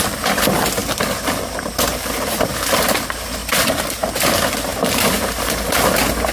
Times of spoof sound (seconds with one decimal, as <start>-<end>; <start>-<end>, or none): 0.8-2.8; 3.4-4.1